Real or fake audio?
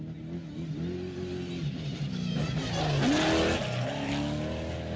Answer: real